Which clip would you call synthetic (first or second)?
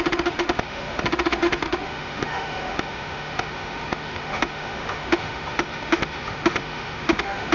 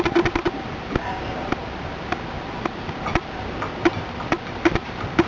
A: first